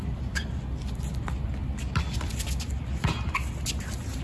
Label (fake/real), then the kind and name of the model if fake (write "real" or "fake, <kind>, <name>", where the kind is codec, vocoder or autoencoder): real